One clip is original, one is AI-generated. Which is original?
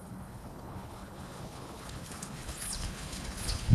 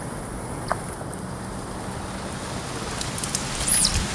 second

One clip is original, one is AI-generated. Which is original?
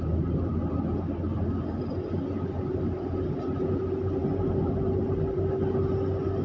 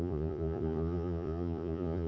first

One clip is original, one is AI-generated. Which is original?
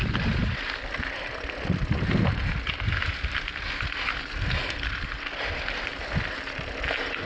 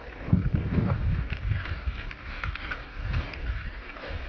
first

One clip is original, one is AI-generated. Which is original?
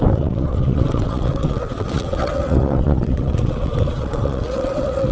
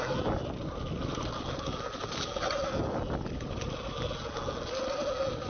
second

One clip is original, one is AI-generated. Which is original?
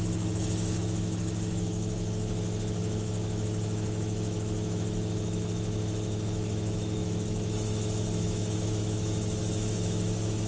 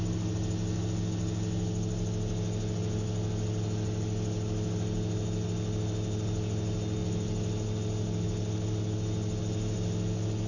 second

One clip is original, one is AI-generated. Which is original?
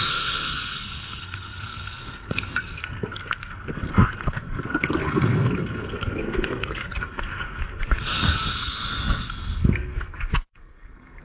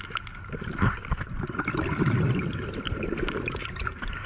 second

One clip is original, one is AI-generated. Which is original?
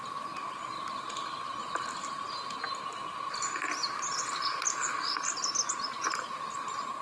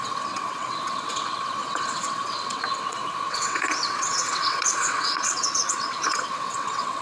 first